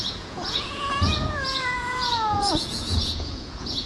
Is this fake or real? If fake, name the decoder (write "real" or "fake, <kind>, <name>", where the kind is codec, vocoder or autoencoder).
fake, vocoder, Vocos